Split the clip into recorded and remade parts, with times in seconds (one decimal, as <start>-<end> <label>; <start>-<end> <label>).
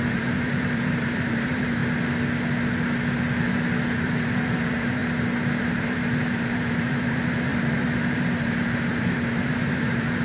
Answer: 0.0-1.8 remade; 1.8-4.0 recorded; 4.0-5.0 remade; 5.0-5.8 recorded; 5.8-10.2 remade